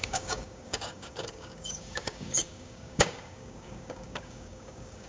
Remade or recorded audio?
remade